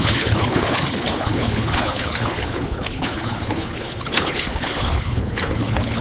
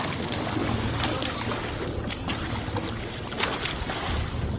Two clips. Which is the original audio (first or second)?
second